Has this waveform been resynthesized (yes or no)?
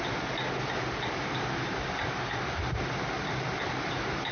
no